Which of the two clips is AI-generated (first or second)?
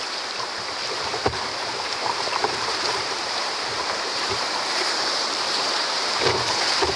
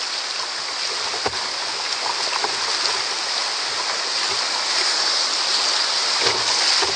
first